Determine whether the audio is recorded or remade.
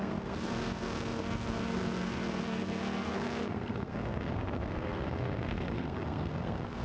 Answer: remade